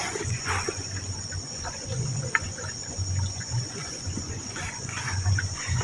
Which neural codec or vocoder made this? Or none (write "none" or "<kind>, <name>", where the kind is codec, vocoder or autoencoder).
vocoder, Vocos